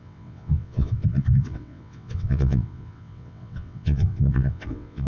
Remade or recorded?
remade